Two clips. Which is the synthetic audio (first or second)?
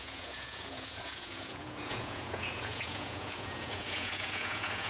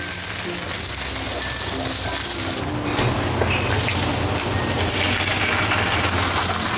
first